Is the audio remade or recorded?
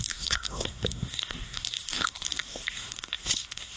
remade